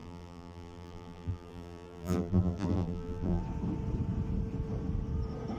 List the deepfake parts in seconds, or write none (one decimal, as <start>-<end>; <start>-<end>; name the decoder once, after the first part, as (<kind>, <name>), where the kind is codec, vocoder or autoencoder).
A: 0.0-3.4 (vocoder, BigVGAN v2)